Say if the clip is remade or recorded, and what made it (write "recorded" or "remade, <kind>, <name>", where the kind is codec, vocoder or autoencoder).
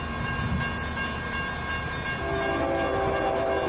recorded